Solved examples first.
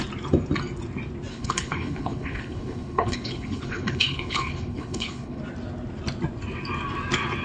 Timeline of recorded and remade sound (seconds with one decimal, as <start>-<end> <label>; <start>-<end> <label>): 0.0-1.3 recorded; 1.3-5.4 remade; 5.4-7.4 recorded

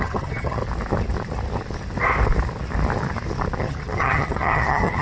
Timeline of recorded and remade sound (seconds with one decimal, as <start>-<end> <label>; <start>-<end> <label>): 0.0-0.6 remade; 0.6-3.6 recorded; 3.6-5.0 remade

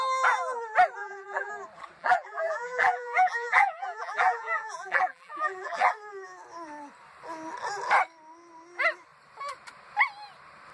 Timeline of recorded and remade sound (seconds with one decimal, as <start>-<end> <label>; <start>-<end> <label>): 0.0-1.0 recorded; 1.0-1.5 remade; 1.5-2.0 recorded; 2.0-5.9 remade; 5.9-10.7 recorded

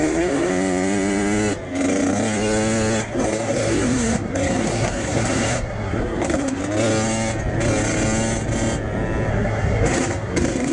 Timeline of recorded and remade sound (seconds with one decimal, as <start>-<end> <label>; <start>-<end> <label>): 0.0-0.5 remade; 0.5-3.0 recorded; 3.0-6.6 remade; 6.6-9.3 recorded; 9.3-10.7 remade

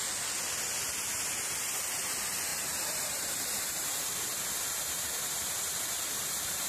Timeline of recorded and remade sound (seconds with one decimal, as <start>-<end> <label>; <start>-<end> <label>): 0.0-2.5 recorded; 2.5-6.7 remade